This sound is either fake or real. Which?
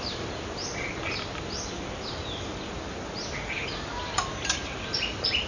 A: real